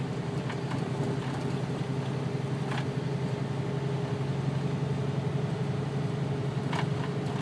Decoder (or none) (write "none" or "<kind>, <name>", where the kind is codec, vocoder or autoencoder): none